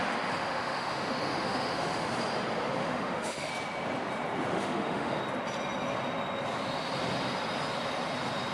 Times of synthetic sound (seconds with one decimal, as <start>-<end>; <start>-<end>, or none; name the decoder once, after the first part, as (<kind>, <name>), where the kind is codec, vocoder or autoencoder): 0.4-2.1 (autoencoder, DAC-VAE); 2.8-3.5; 4.5-5.2